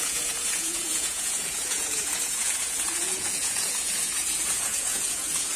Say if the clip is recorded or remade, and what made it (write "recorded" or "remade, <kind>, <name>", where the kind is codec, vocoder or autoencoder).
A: remade, vocoder, Vocos